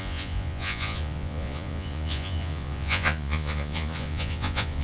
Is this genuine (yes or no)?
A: no